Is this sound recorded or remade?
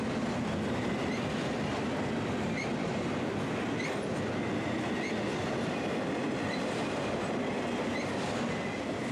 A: recorded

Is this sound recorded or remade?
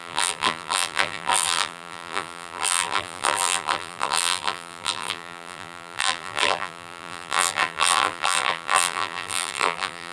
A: remade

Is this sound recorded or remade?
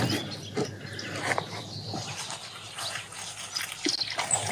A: recorded